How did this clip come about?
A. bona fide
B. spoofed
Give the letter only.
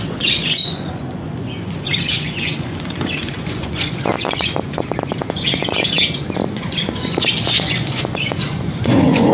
B